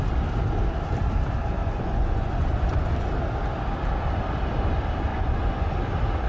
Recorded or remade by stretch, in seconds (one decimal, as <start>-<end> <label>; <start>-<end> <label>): 0.0-1.6 recorded; 1.6-3.1 remade; 3.1-5.1 recorded; 5.1-5.7 remade; 5.7-6.3 recorded